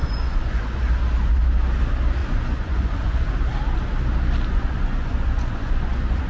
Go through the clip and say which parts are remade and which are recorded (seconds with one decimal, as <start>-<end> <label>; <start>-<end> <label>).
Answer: 0.0-0.8 remade; 0.8-2.2 recorded; 2.2-3.3 remade; 3.3-4.5 recorded; 4.5-6.3 remade